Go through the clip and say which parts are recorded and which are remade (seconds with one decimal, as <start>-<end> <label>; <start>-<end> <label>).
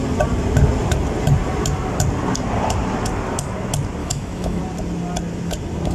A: 0.0-4.0 recorded; 4.0-4.6 remade; 4.6-5.9 recorded